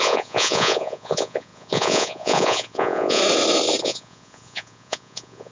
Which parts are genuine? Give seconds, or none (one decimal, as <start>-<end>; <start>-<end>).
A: 3.2-3.8